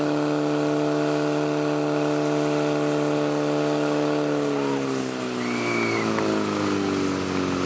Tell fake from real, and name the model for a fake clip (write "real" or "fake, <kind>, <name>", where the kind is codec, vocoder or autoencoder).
real